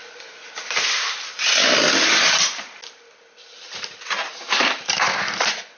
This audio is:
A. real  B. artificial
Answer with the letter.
A